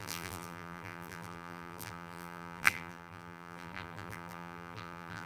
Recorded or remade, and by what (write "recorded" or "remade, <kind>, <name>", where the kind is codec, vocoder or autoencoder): remade, vocoder, BigVGAN v2